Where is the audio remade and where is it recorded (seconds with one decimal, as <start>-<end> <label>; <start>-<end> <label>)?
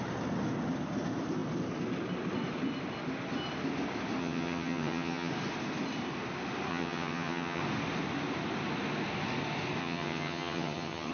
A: 0.0-4.2 recorded; 4.2-5.3 remade; 5.3-6.7 recorded; 6.7-7.6 remade; 7.6-9.8 recorded; 9.8-11.1 remade